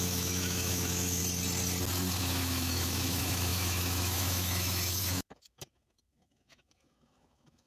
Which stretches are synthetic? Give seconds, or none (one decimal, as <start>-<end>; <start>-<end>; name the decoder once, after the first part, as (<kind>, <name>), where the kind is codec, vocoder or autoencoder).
0.0-1.2 (autoencoder, DAC-VAE); 2.2-7.7